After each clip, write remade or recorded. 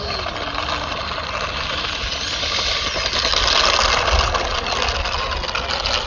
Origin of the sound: recorded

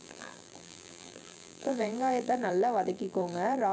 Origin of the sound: remade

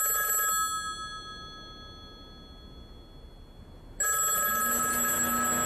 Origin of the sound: recorded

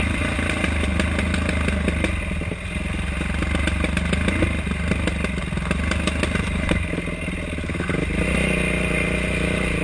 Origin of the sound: recorded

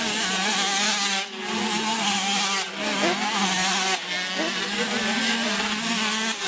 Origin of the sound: recorded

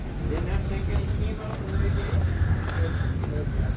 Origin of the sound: recorded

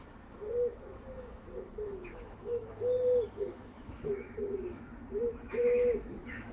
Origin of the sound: remade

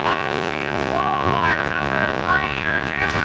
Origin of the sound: remade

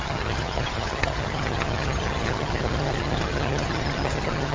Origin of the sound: remade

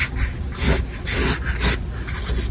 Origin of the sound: recorded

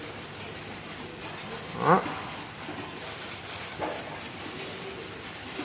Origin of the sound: recorded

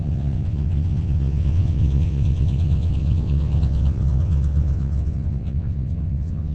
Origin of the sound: remade